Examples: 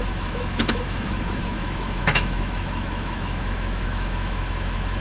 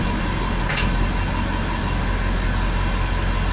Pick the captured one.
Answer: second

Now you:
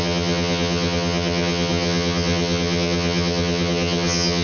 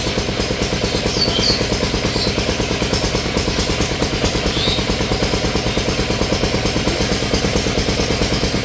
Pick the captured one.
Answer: second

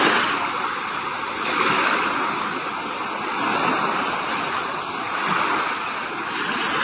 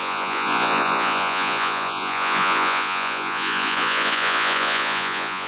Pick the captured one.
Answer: first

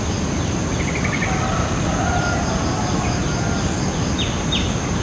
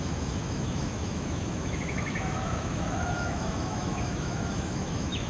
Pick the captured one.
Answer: first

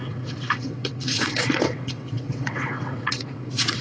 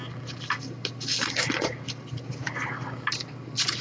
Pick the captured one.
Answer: second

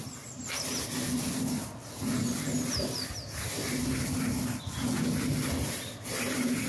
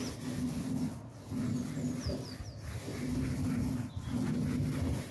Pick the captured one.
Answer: second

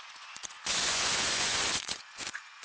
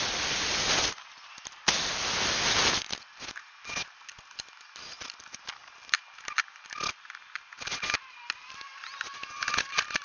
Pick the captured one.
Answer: second